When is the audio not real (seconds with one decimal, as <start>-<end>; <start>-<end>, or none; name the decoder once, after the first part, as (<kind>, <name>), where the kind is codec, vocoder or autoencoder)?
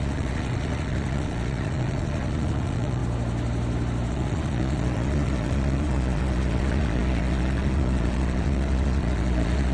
0.0-3.0 (vocoder, Vocos); 4.1-9.7